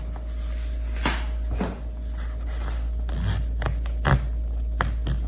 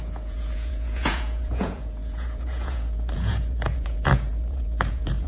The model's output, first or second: second